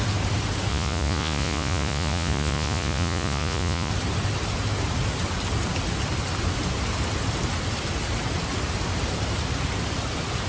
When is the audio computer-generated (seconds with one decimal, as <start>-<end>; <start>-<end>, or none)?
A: 0.7-3.9